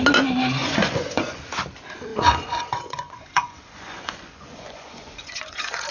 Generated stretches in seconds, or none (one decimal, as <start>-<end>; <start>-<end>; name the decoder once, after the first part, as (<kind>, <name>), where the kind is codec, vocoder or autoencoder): 0.6-1.4 (vocoder, Vocos); 2.1-5.9